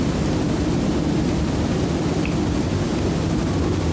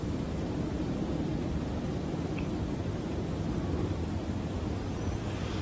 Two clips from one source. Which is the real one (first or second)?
first